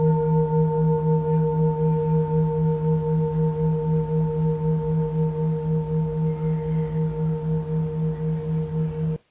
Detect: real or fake real